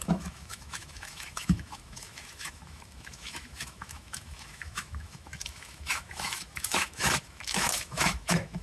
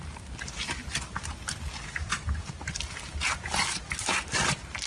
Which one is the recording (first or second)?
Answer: second